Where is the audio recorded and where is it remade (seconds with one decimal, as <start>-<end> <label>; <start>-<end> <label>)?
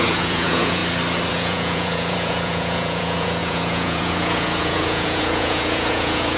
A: 0.0-0.8 remade; 0.8-1.3 recorded; 1.3-6.4 remade